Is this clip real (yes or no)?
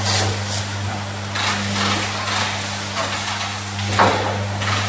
yes